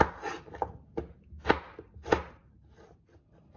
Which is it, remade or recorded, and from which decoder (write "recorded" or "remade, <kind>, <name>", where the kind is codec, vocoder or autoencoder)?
recorded